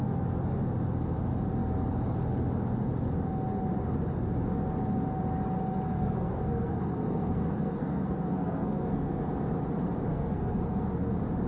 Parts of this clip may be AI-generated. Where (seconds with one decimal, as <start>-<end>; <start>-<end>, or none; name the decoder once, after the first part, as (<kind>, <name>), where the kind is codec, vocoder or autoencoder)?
5.9-9.2 (codec, SNAC); 10.1-11.1

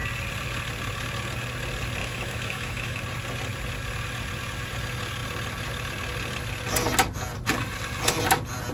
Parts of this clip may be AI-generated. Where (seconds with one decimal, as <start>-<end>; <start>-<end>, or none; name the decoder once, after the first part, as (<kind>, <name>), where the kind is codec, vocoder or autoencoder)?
2.0-3.0 (autoencoder, DAC-VAE)

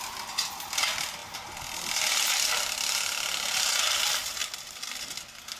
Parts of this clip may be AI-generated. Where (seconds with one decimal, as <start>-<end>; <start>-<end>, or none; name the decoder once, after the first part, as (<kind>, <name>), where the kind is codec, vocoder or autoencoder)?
none